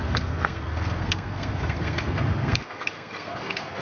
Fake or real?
fake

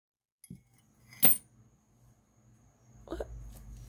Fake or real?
real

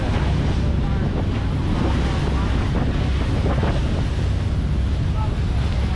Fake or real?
real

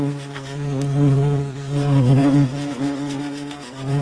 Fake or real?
fake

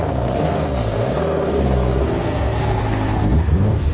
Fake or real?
fake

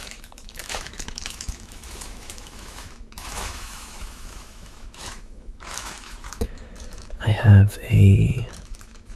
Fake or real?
fake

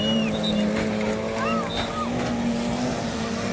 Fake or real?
real